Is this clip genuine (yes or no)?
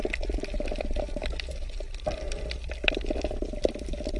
yes